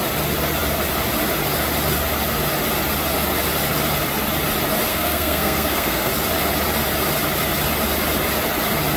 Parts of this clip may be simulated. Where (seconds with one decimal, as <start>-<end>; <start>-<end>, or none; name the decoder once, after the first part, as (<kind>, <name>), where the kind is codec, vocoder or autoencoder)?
4.9-6.1 (codec, SNAC)